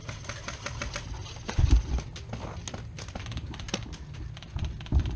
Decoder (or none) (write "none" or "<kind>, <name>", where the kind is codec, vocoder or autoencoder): none